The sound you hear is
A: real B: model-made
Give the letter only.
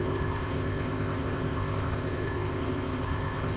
B